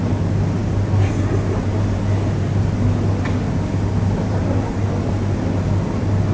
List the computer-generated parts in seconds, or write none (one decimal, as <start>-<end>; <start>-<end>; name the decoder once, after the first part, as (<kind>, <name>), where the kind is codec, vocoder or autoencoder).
none